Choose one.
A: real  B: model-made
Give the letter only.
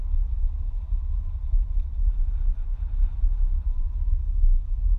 A